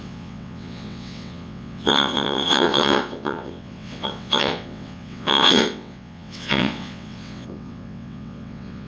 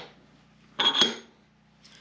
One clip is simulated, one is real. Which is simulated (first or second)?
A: first